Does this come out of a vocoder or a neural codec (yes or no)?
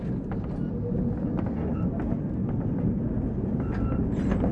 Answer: no